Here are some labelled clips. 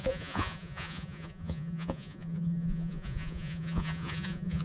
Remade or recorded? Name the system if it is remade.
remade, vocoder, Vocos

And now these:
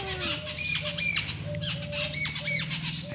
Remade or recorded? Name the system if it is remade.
recorded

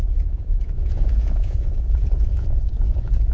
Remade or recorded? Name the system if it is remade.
remade, vocoder, Vocos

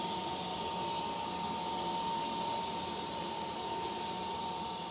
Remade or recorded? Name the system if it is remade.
recorded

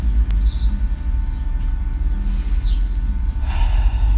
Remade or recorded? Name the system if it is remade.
recorded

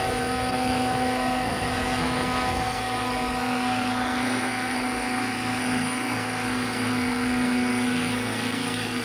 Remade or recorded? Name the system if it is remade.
remade, codec, SNAC